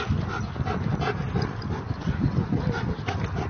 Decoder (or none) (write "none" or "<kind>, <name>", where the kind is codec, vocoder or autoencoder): none